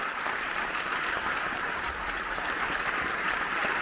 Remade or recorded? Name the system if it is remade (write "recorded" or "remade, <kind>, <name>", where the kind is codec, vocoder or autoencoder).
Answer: recorded